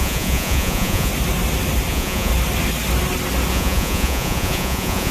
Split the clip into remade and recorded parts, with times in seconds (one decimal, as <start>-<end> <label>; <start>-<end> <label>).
0.0-1.1 remade; 1.1-1.9 recorded; 1.9-2.3 remade; 2.3-3.5 recorded; 3.5-5.1 remade